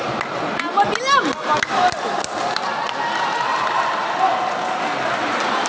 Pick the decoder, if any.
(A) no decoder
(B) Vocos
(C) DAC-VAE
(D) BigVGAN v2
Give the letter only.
A